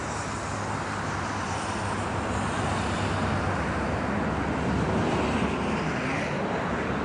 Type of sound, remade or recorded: recorded